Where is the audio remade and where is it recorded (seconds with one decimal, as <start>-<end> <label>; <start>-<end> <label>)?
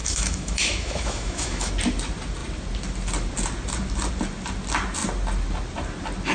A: 0.0-1.7 remade; 1.7-6.3 recorded